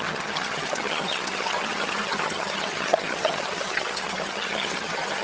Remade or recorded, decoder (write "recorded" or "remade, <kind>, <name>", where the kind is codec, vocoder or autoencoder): remade, vocoder, HiFi-GAN